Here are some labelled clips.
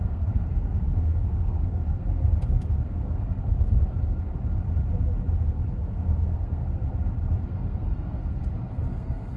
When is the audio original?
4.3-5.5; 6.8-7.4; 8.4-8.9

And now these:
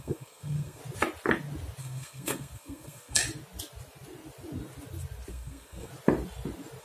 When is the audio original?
0.8-1.8; 3.2-5.3; 5.9-6.8

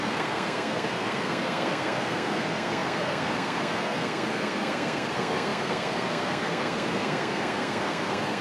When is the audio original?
none

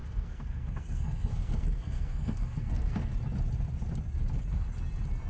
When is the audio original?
3.1-5.3

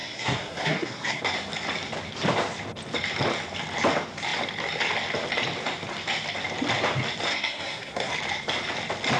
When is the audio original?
1.2-7.3; 8.1-9.2

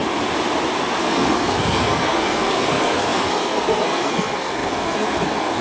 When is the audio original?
0.0-1.0

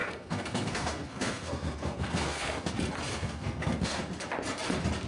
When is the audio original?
2.7-3.1; 4.0-5.1